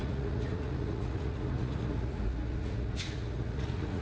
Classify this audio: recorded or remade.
remade